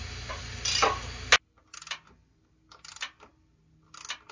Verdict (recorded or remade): recorded